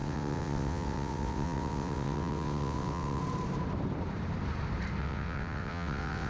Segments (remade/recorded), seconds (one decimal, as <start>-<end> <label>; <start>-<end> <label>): 0.0-3.2 remade; 3.2-5.0 recorded; 5.0-6.3 remade